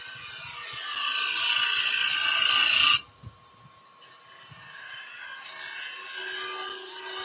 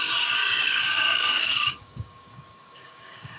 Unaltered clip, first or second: first